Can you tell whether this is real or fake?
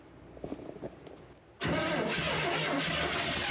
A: real